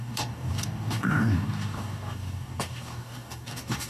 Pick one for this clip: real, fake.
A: fake